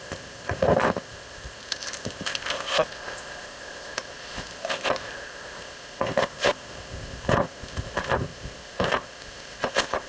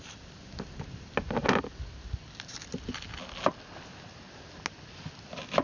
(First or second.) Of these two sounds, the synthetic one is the first